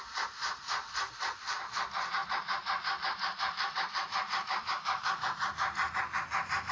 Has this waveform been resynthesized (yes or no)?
yes